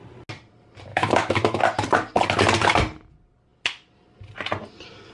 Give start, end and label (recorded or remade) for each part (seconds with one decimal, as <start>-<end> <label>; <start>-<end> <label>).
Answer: 0.0-0.9 recorded; 0.9-1.6 remade; 1.6-5.1 recorded